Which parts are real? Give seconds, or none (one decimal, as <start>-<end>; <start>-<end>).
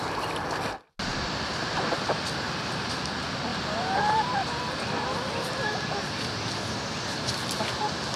0.0-8.2